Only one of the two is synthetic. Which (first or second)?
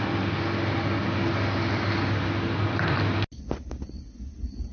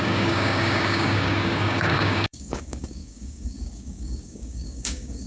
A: second